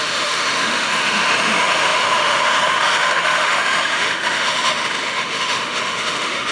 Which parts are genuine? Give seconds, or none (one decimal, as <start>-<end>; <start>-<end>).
none